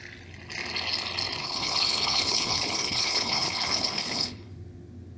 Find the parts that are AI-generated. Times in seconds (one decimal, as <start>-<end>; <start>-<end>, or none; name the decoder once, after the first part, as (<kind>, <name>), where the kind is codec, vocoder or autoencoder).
1.4-4.5 (codec, HILCodec)